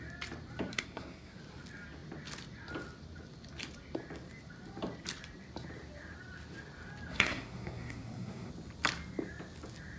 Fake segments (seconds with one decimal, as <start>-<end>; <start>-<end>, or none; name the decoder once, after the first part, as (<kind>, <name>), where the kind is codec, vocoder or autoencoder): 0.7-1.4 (codec, SNAC); 7.1-8.5